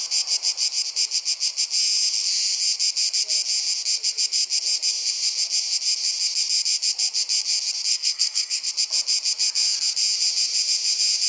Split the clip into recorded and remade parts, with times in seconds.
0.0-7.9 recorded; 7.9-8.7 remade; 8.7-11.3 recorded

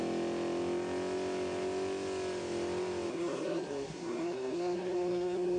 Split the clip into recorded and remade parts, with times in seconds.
0.0-3.1 recorded; 3.1-5.6 remade

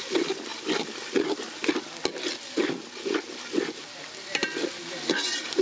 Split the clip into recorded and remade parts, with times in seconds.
0.0-5.6 recorded